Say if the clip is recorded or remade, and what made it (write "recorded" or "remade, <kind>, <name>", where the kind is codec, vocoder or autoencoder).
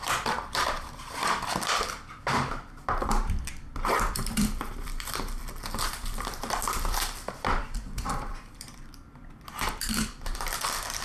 remade, vocoder, BigVGAN v2